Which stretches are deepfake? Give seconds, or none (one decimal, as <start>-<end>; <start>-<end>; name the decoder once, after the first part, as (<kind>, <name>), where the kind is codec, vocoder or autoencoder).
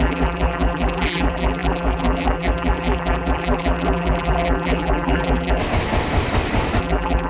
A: 0.0-5.6 (vocoder, BigVGAN v2); 6.8-7.3